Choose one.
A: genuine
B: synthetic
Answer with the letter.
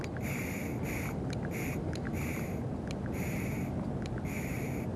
A